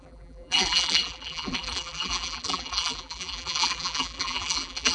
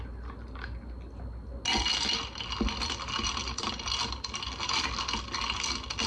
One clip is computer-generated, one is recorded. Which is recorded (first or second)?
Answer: second